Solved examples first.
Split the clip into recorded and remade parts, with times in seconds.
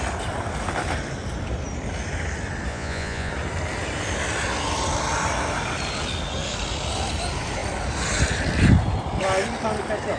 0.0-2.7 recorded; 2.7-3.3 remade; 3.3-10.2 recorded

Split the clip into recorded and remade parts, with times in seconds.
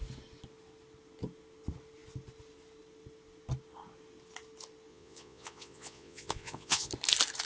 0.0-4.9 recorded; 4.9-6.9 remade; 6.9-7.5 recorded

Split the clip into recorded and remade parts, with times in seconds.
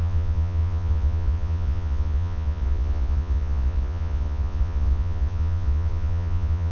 0.0-6.7 remade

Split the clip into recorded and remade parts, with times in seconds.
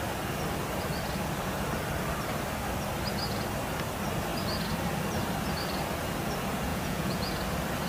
0.0-6.7 recorded; 6.7-7.3 remade; 7.3-7.9 recorded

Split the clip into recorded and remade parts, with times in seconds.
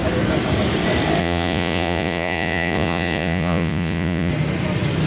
0.0-1.2 recorded; 1.2-4.3 remade; 4.3-5.1 recorded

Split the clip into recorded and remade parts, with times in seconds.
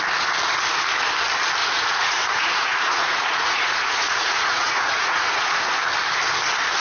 0.0-1.6 recorded; 1.6-5.7 remade; 5.7-6.8 recorded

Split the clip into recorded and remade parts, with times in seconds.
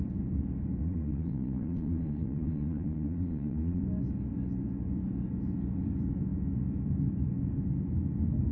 0.0-0.8 recorded; 0.8-3.8 remade; 3.8-8.5 recorded